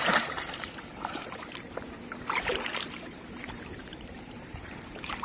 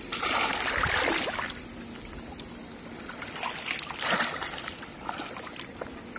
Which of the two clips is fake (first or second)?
first